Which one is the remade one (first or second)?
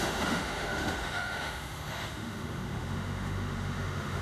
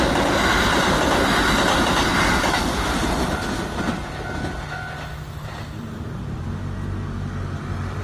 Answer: first